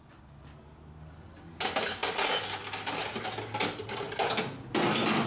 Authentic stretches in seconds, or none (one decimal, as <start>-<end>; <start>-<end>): 0.0-5.3